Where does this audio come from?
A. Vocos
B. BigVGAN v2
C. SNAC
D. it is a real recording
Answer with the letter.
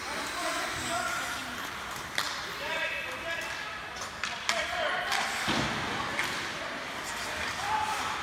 D